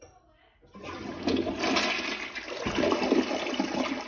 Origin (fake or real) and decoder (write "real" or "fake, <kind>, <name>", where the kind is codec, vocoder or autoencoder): real